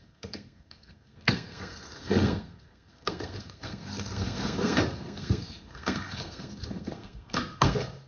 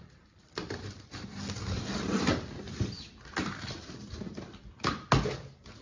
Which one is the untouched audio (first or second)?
second